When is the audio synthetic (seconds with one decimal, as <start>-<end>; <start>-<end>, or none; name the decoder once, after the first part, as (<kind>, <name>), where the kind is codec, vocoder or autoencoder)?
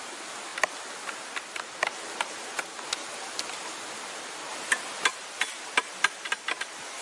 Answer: none